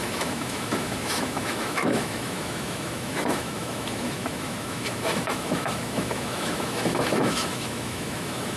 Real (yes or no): no